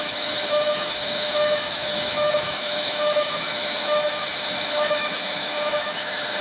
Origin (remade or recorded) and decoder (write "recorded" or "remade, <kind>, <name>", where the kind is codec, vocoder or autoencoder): remade, autoencoder, DAC-VAE